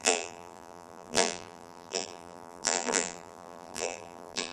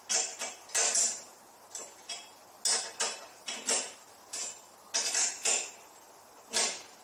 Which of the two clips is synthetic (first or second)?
first